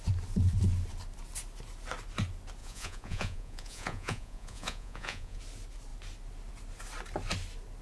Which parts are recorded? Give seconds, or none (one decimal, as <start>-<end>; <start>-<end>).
0.0-2.6; 5.4-7.8